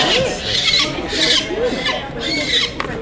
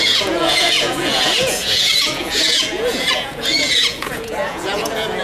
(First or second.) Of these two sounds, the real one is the first